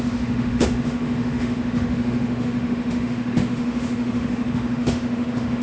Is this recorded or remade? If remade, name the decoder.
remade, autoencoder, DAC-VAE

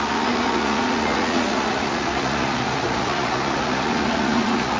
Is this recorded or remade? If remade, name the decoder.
remade, vocoder, Vocos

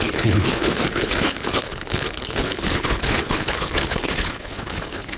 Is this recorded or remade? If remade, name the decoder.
remade, codec, HILCodec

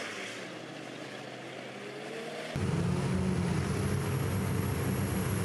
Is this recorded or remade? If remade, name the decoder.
recorded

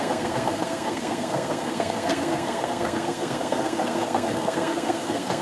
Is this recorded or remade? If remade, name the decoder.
remade, codec, SNAC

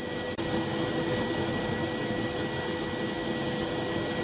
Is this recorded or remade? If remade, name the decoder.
recorded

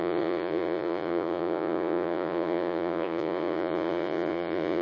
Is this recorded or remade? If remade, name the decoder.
remade, vocoder, Vocos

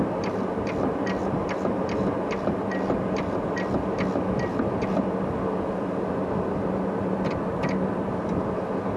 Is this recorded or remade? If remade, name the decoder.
recorded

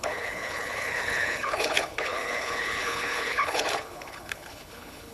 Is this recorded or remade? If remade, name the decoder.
remade, codec, HILCodec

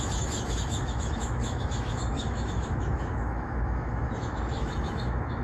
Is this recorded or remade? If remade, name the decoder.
remade, autoencoder, DAC-VAE